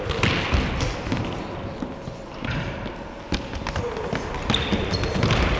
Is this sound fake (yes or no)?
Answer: no